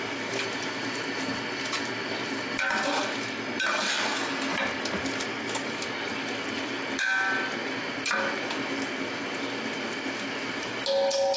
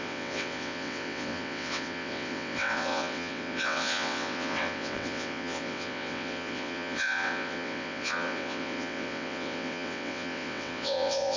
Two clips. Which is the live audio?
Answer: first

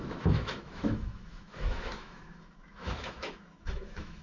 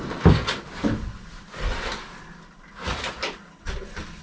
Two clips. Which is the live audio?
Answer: second